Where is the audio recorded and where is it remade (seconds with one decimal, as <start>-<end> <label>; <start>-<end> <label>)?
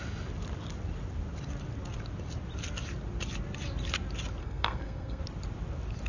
0.0-4.4 recorded; 4.4-5.2 remade; 5.2-6.1 recorded